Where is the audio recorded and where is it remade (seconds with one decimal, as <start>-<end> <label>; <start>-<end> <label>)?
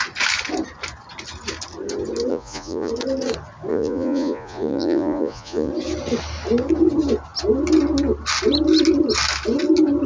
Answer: 0.0-2.3 recorded; 2.3-2.9 remade; 2.9-3.7 recorded; 3.7-5.7 remade; 5.7-10.1 recorded